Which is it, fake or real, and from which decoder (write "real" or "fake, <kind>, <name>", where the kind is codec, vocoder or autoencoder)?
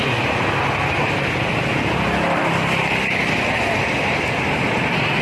real